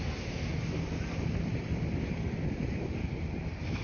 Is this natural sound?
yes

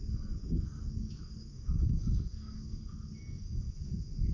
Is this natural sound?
no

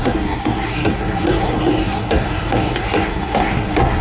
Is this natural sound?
no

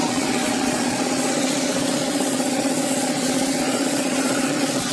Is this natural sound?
no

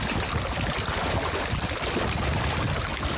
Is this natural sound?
yes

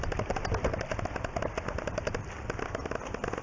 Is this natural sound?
yes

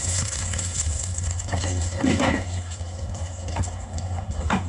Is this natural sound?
no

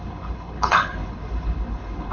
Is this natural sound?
no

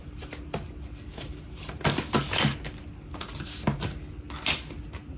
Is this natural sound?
yes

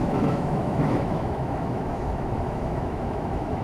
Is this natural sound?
no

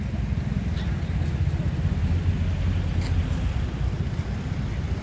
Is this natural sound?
yes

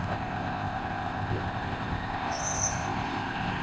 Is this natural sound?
no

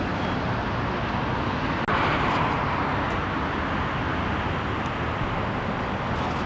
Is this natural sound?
yes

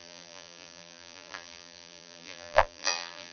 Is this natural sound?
no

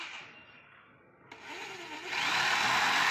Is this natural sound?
yes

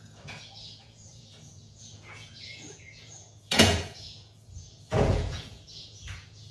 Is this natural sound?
no